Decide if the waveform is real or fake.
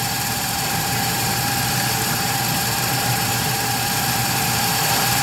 fake